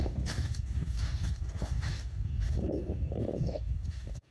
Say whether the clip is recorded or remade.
remade